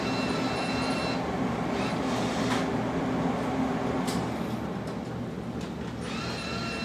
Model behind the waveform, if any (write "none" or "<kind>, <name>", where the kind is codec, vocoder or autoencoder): none